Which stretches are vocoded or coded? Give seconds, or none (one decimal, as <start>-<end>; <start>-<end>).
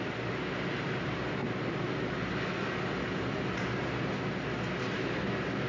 none